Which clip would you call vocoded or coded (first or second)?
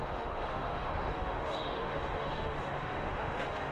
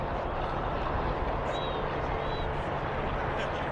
first